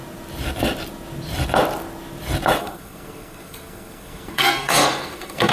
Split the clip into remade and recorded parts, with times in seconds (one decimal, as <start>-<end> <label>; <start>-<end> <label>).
0.0-2.6 recorded; 2.6-5.5 remade